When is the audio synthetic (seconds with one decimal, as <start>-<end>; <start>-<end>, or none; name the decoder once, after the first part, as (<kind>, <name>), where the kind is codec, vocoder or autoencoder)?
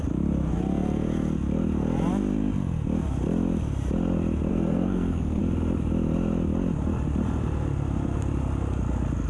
4.5-5.4 (codec, SNAC)